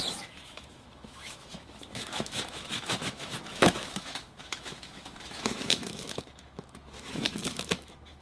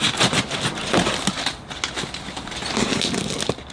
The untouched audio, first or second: second